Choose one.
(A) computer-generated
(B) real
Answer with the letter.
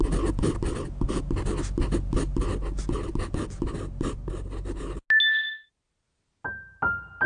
B